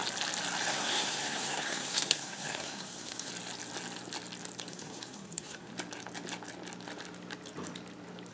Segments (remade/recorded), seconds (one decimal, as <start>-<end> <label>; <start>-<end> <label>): 0.0-0.7 recorded; 0.7-3.3 remade; 3.3-4.7 recorded; 4.7-5.7 remade; 5.7-8.3 recorded